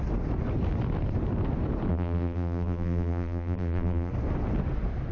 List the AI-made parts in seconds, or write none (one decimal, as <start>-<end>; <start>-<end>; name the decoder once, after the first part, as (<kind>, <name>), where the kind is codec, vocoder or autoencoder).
1.9-4.1 (vocoder, BigVGAN v2)